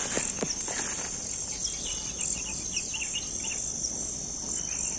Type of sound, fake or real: real